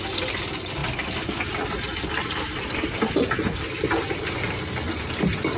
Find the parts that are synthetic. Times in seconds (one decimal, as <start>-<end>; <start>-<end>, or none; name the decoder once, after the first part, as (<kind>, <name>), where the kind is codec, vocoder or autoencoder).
none